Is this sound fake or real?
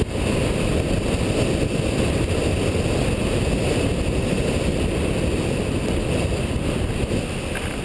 real